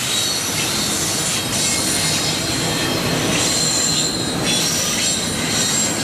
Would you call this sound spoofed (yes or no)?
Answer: no